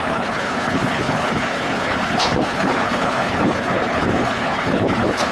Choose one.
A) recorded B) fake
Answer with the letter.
B